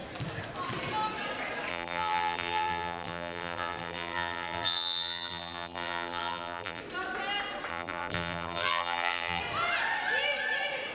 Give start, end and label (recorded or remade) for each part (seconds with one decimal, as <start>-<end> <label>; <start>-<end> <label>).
0.0-1.7 recorded; 1.7-6.8 remade; 6.8-7.7 recorded; 7.7-9.4 remade; 9.4-10.9 recorded